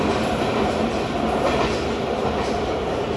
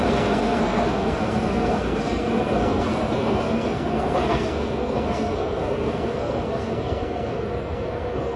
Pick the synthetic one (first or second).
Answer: second